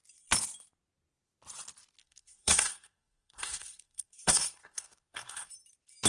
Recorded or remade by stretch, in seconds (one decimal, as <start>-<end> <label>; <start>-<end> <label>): 0.0-2.0 recorded; 2.0-5.5 remade; 5.5-6.1 recorded